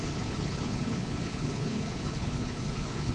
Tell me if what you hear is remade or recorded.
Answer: remade